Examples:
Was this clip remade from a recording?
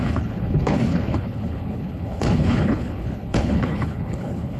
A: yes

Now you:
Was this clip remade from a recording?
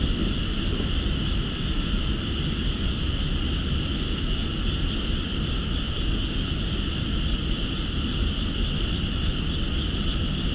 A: no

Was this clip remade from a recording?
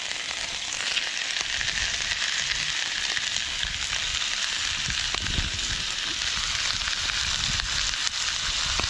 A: no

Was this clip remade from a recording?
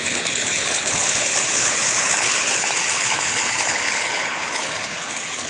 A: yes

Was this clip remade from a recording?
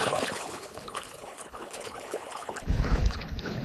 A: yes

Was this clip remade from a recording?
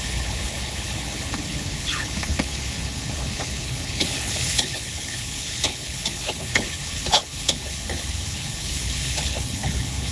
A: yes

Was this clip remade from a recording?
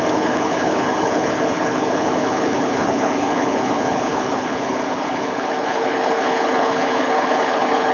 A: yes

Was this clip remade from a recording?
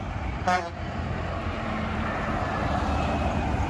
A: no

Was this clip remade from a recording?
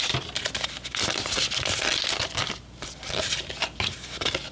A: no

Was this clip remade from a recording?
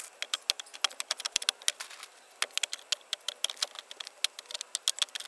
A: no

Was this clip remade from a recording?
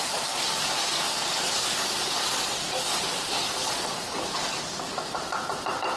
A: no